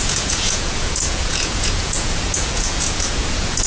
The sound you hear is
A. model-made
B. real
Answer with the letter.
A